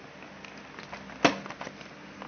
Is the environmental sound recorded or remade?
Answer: recorded